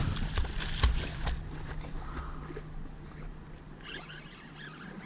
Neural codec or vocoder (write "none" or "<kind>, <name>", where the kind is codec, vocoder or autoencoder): none